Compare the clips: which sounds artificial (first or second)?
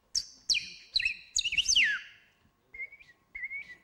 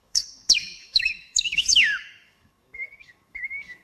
second